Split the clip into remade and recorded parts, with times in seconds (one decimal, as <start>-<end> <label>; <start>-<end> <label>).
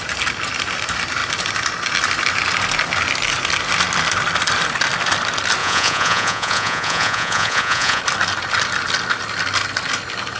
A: 0.0-5.6 recorded; 5.6-8.0 remade; 8.0-10.4 recorded